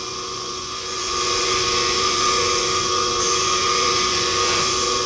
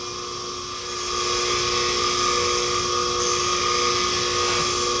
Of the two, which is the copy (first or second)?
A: first